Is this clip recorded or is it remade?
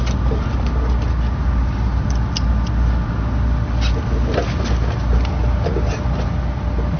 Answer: recorded